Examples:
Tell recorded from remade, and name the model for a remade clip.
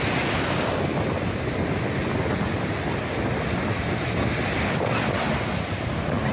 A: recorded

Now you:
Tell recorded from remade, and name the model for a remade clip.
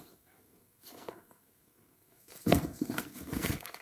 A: remade, codec, SNAC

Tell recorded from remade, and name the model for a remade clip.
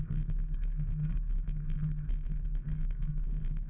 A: remade, codec, SNAC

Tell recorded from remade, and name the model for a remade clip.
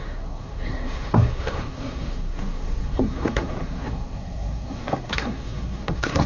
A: remade, codec, SNAC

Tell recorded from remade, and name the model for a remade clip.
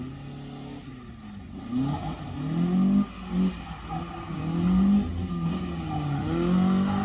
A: recorded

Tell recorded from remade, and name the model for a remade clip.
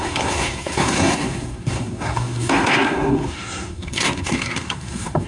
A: remade, codec, SNAC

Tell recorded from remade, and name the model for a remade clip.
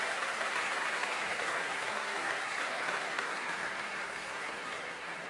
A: remade, codec, SNAC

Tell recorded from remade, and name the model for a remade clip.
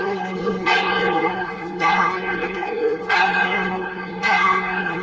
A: remade, codec, SNAC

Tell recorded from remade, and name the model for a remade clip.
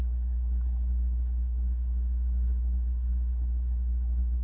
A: remade, codec, SNAC